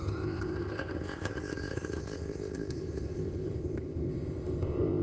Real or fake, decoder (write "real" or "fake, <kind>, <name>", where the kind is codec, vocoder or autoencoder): fake, codec, ZipCodec